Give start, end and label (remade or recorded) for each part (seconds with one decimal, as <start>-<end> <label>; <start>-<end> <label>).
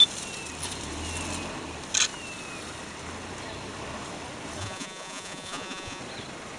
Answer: 0.0-4.6 recorded; 4.6-6.0 remade; 6.0-6.6 recorded